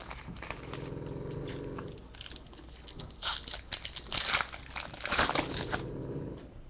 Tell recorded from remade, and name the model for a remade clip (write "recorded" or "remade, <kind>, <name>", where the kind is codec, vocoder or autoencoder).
recorded